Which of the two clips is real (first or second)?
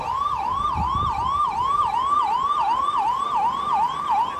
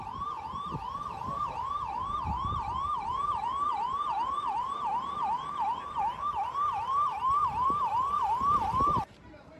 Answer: first